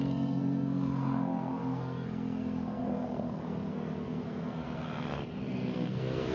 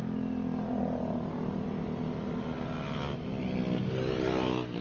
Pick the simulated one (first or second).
first